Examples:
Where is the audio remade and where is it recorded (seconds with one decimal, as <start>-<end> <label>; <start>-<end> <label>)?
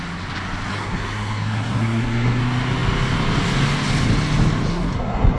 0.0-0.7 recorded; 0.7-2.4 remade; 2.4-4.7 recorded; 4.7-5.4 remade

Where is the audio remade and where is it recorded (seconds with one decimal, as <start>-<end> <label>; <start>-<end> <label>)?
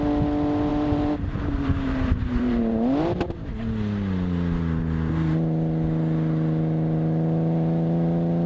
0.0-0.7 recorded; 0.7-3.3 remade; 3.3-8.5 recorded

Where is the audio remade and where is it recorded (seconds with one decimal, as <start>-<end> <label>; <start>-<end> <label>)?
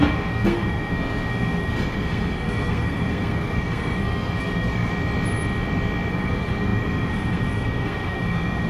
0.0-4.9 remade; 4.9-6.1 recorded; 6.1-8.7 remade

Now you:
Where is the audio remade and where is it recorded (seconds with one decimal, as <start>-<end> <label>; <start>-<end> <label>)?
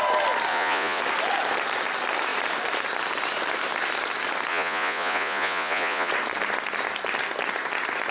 0.0-0.5 recorded; 0.5-1.0 remade; 1.0-4.5 recorded; 4.5-6.1 remade; 6.1-8.1 recorded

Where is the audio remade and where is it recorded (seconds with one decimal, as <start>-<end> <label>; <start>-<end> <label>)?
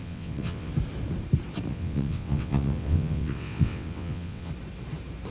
0.0-0.7 remade; 0.7-1.7 recorded; 1.7-4.5 remade; 4.5-5.3 recorded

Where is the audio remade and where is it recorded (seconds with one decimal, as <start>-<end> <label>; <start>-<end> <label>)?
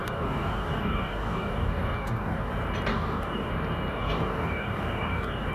0.0-2.5 remade; 2.5-2.9 recorded; 2.9-3.5 remade; 3.5-3.9 recorded; 3.9-5.5 remade